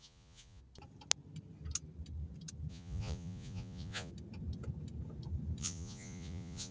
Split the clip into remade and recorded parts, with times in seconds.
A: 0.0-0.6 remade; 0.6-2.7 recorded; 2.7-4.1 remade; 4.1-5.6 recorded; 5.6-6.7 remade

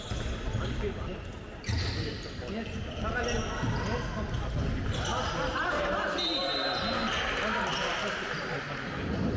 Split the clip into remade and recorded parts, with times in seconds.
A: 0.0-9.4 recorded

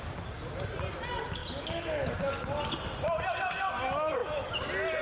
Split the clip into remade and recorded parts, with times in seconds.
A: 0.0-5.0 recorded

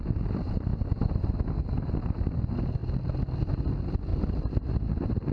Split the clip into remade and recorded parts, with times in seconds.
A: 0.0-0.7 remade; 0.7-2.0 recorded; 2.0-2.8 remade; 2.8-3.4 recorded; 3.4-5.3 remade

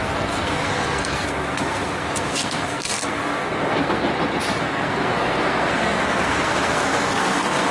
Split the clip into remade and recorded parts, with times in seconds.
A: 0.0-4.1 remade; 4.1-4.6 recorded; 4.6-7.7 remade